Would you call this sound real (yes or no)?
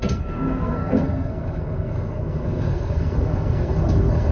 no